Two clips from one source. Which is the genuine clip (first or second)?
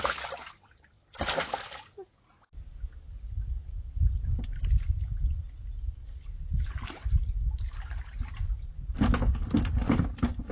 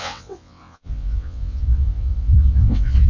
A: first